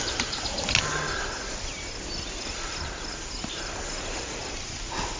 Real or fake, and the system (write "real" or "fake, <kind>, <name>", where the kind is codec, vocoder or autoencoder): real